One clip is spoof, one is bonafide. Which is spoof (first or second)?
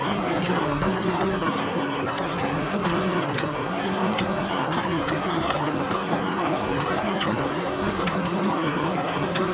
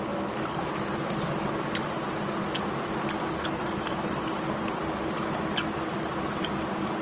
first